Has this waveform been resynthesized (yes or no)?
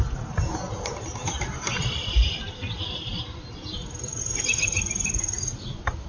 yes